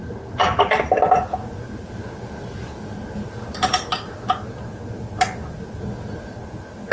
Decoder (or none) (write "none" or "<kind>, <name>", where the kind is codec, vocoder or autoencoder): none